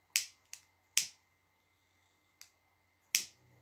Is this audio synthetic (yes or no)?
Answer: no